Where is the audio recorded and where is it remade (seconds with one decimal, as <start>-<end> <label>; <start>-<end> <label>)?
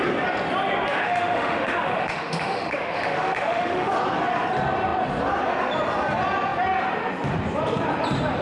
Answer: 0.0-0.9 recorded; 0.9-3.9 remade; 3.9-8.4 recorded